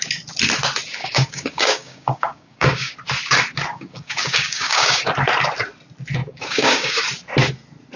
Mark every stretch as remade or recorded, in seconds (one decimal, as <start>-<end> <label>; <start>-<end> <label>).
0.0-1.0 recorded; 1.0-2.9 remade; 2.9-3.7 recorded; 3.7-5.1 remade; 5.1-6.2 recorded; 6.2-7.0 remade; 7.0-8.0 recorded